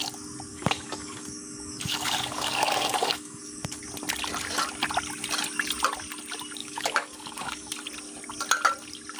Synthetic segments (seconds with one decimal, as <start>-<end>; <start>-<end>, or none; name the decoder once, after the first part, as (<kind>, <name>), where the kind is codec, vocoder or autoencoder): 0.5-3.8 (codec, DAC); 6.6-7.7